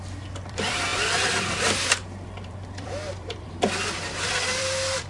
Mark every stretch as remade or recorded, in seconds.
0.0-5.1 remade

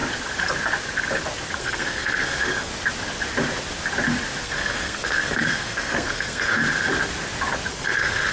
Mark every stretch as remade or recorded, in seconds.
0.0-1.6 recorded; 1.6-2.7 remade; 2.7-4.4 recorded; 4.4-6.6 remade; 6.6-7.7 recorded; 7.7-8.3 remade

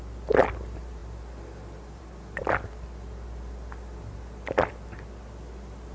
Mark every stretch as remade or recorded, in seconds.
0.0-5.9 recorded

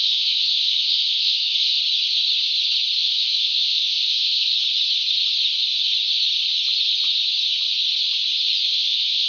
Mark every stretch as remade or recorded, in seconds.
0.0-1.8 remade; 1.8-3.0 recorded; 3.0-4.5 remade; 4.5-8.7 recorded; 8.7-9.3 remade

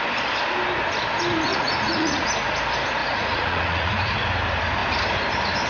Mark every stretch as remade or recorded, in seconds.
0.0-1.5 recorded; 1.5-2.3 remade; 2.3-3.0 recorded; 3.0-3.9 remade; 3.9-5.7 recorded